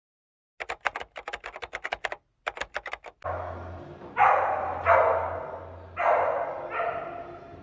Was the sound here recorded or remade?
recorded